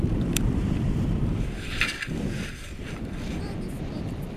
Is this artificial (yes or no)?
yes